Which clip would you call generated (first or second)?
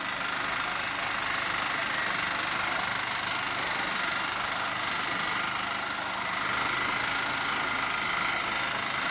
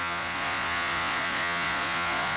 second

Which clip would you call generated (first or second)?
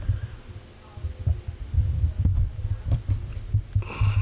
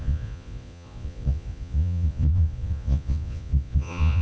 second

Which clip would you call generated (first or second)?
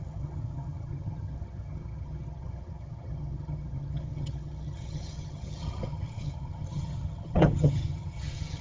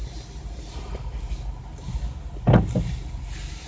first